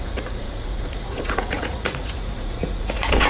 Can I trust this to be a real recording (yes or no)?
no